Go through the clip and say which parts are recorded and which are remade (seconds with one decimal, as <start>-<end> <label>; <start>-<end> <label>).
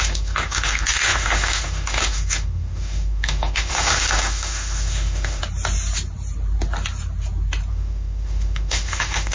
0.0-5.4 remade; 5.4-7.7 recorded; 7.7-9.3 remade